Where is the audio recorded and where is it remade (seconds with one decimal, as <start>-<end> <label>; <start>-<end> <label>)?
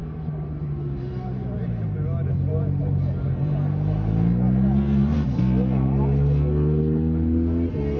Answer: 0.0-8.0 recorded